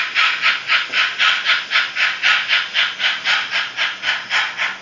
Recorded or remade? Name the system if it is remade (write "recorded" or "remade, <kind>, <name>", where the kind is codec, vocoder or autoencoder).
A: recorded